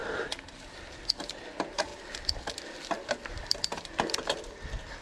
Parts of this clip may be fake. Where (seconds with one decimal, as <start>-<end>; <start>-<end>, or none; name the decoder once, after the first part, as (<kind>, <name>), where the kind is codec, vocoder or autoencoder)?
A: 1.3-1.9 (vocoder, BigVGAN v2)